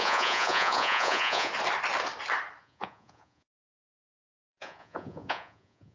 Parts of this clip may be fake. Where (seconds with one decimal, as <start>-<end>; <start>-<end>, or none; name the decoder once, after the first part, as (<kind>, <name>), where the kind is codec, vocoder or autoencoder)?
0.0-1.5 (vocoder, Vocos); 2.6-5.9